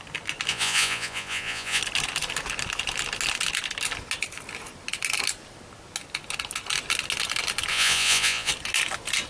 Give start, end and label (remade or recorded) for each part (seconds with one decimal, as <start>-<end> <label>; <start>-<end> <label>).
0.0-0.5 recorded; 0.5-1.8 remade; 1.8-7.7 recorded; 7.7-8.5 remade; 8.5-9.3 recorded